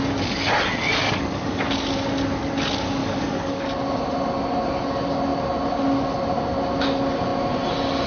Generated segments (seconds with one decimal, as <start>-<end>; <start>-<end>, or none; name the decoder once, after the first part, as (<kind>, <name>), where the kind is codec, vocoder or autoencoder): 1.0-1.6 (codec, DAC); 3.0-3.6